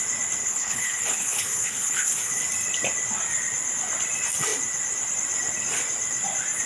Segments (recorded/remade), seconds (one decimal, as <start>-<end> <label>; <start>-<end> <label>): 0.0-0.4 recorded; 0.4-2.4 remade; 2.4-6.7 recorded